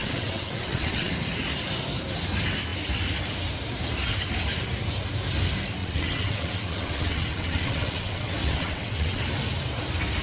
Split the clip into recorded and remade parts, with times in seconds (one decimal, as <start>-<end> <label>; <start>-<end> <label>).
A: 0.0-1.1 remade; 1.1-5.8 recorded; 5.8-9.2 remade; 9.2-10.2 recorded